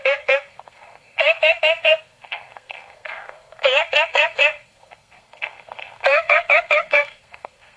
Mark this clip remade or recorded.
remade